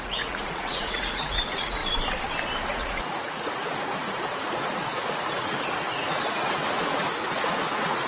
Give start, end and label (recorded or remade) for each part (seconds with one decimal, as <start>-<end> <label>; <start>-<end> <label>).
0.0-1.8 remade; 1.8-2.7 recorded; 2.7-8.1 remade